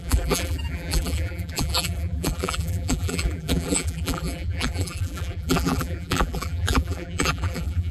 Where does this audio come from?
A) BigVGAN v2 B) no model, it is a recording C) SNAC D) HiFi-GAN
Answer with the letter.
A